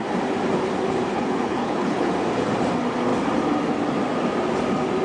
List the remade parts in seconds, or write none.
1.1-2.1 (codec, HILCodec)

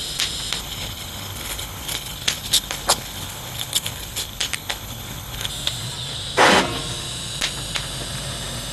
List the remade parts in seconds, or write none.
0.6-5.5 (codec, HILCodec)

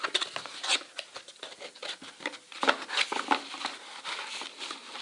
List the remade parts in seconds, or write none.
none

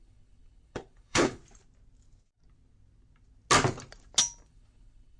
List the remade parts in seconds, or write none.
0.0-1.4 (codec, HILCodec); 4.5-5.2

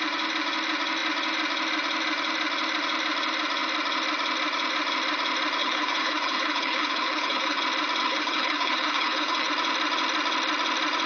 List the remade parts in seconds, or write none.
5.6-7.6 (codec, HILCodec); 8.0-9.5